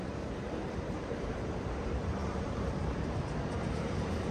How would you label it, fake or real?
fake